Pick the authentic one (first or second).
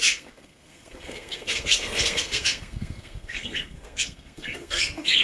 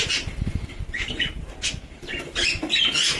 second